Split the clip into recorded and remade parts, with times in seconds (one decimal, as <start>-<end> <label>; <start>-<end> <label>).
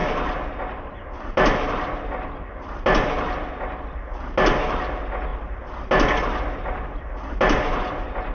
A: 0.0-8.3 recorded